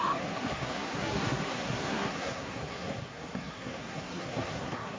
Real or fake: fake